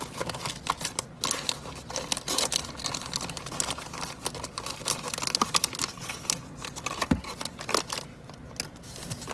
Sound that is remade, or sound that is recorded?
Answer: recorded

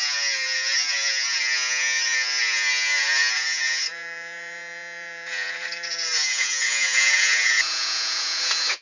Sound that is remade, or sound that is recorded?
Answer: remade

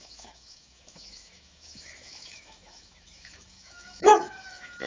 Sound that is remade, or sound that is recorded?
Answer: remade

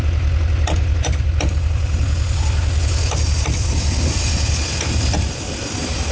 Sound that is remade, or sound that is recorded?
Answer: recorded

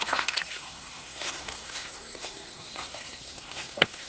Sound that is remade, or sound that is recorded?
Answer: remade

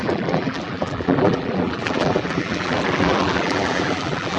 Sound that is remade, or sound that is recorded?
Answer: remade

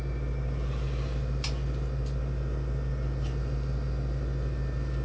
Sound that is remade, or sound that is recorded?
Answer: recorded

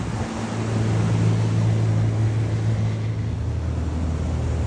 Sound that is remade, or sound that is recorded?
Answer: recorded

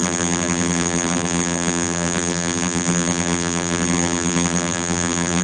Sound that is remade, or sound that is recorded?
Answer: remade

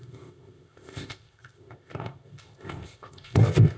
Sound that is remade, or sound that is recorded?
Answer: remade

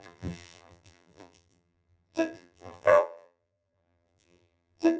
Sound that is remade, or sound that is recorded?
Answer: remade